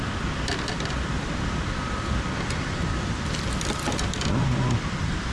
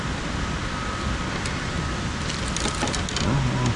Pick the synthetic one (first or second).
first